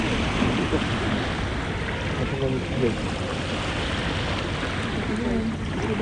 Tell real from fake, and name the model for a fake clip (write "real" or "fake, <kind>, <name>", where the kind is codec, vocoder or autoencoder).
real